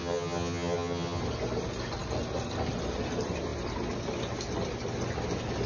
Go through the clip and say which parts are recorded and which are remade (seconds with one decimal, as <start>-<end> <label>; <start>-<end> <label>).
0.0-1.2 remade; 1.2-5.7 recorded